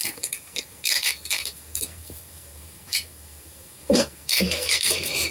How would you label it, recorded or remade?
remade